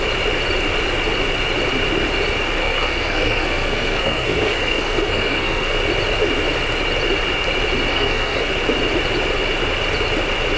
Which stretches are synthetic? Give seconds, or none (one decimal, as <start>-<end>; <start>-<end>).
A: 2.6-5.8; 7.9-8.5